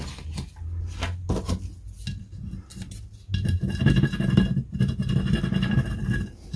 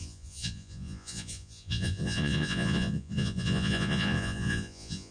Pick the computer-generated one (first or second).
second